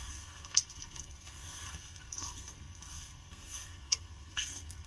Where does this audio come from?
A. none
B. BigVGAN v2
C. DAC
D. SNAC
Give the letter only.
D